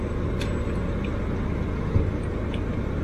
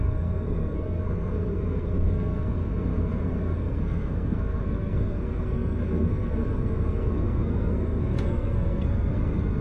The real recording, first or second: first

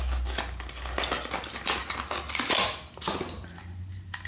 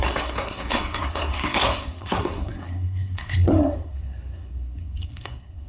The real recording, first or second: first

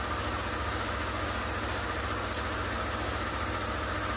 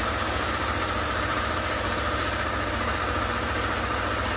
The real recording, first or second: first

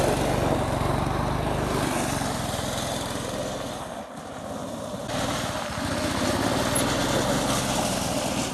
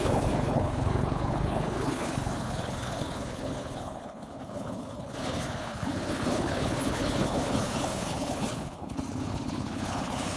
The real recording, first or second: first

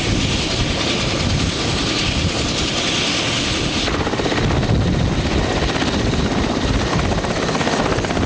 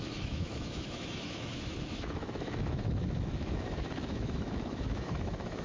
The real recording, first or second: first